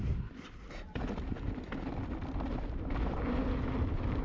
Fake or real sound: real